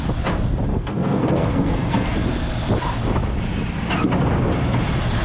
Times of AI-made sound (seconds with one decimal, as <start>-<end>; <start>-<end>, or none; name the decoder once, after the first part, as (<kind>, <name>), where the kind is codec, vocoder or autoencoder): 0.7-2.1 (codec, SNAC)